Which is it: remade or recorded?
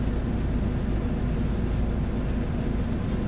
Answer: recorded